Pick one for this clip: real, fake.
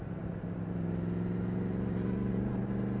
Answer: real